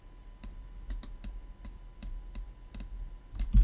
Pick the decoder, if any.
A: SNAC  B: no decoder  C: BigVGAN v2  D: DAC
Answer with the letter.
B